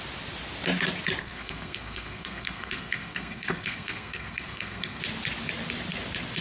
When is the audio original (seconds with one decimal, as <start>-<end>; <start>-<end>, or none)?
0.0-1.2; 5.0-6.4